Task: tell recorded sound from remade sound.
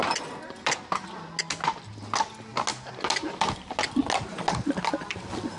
recorded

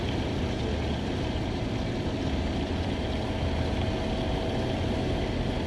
recorded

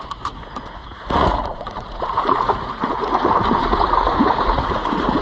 remade